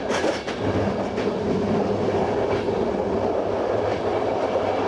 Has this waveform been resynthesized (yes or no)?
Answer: no